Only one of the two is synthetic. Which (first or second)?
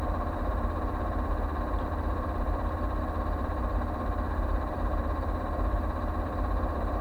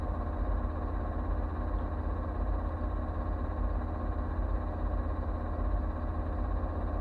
first